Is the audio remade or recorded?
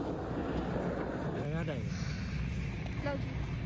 recorded